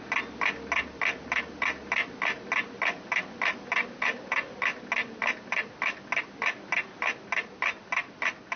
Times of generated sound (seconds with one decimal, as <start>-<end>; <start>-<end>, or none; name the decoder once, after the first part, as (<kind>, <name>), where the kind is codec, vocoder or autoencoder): none